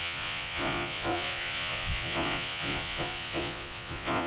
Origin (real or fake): fake